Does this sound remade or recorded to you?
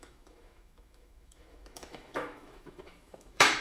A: remade